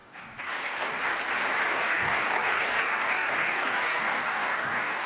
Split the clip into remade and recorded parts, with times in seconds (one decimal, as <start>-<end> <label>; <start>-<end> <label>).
0.0-1.0 remade; 1.0-1.7 recorded; 1.7-5.1 remade